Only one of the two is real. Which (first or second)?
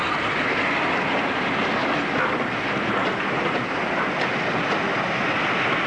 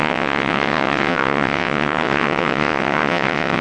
first